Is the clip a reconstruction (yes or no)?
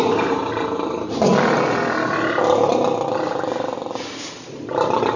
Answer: no